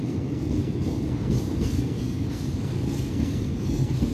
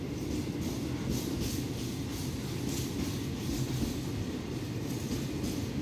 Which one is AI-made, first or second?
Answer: first